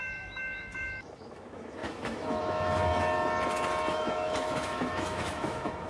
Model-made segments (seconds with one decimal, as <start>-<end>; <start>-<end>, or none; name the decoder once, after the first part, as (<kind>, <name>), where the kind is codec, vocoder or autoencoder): 0.0-2.9 (autoencoder, DAC-VAE); 3.9-5.9